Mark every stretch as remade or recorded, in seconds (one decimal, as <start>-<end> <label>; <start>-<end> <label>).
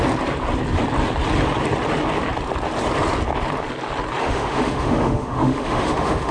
0.0-4.2 recorded; 4.2-6.3 remade